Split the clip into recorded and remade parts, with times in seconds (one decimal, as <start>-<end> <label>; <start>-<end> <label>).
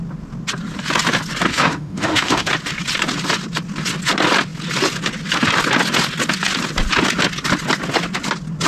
0.0-1.5 recorded; 1.5-2.5 remade; 2.5-8.7 recorded